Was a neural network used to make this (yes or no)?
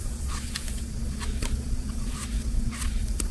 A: yes